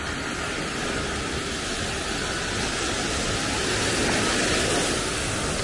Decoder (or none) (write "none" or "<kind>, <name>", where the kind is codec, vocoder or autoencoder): none